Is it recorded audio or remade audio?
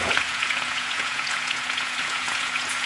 remade